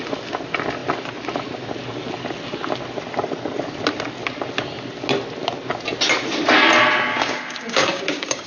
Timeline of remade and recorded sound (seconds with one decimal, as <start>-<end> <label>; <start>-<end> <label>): 0.0-7.1 recorded; 7.1-8.5 remade